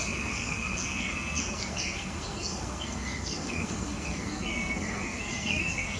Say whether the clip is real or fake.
fake